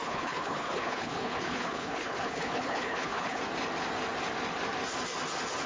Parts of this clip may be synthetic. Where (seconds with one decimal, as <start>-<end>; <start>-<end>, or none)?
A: 0.0-3.4